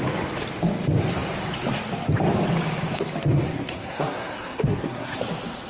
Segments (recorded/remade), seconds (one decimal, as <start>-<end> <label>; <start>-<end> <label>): 0.0-3.5 recorded; 3.5-5.2 remade; 5.2-5.7 recorded